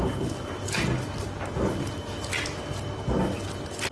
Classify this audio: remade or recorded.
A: recorded